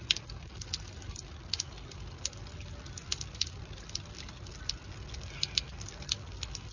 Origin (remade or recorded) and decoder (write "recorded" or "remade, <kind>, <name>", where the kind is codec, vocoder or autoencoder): recorded